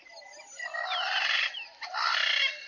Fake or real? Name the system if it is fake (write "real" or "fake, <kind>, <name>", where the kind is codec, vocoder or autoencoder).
real